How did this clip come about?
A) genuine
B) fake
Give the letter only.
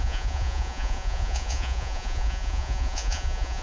B